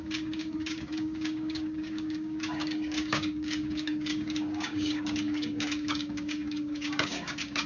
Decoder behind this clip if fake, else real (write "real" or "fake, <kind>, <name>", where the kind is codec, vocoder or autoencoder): fake, codec, DAC